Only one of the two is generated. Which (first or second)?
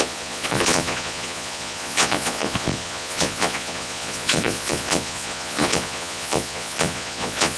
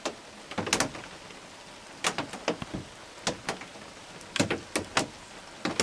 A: first